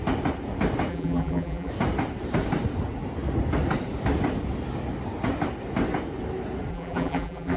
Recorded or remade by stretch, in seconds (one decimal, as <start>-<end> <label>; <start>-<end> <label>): 0.0-0.9 recorded; 0.9-1.7 remade; 1.7-6.7 recorded; 6.7-7.6 remade